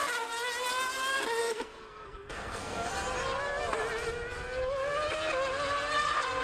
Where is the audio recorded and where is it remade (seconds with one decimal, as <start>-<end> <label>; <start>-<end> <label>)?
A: 0.0-1.4 recorded; 1.4-2.9 remade; 2.9-6.4 recorded